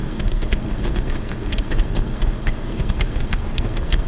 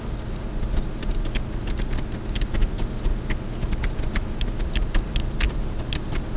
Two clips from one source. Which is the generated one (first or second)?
first